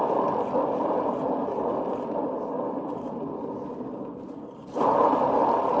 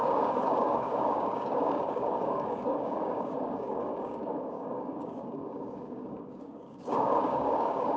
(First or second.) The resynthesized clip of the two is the second